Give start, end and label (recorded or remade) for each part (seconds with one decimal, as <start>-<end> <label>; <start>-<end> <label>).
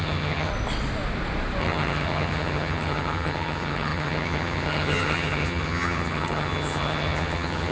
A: 0.0-0.5 remade; 0.5-1.6 recorded; 1.6-7.7 remade